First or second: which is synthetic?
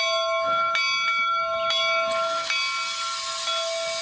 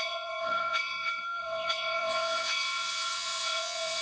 second